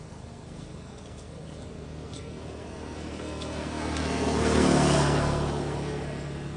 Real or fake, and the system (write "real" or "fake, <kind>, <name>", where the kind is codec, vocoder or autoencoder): fake, codec, SNAC